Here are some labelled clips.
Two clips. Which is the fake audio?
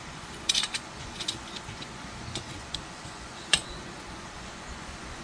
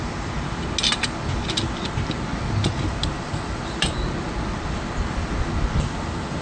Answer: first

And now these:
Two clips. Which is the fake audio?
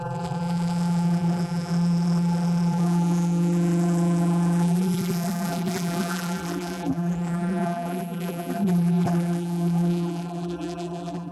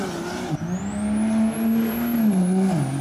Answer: first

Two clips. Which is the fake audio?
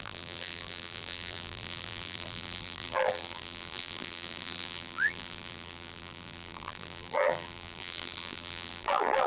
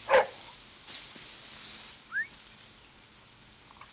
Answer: first